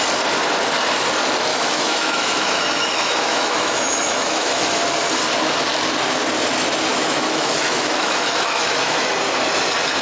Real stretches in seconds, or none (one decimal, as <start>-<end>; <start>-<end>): 0.0-1.5; 4.8-6.9; 9.1-10.0